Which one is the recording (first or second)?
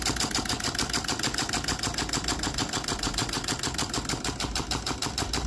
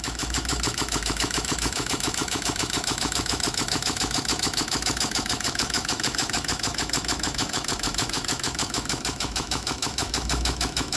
first